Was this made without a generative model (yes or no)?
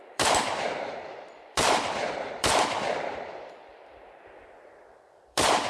no